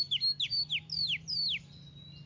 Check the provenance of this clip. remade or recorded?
recorded